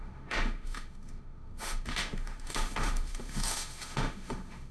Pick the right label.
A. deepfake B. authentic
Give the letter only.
A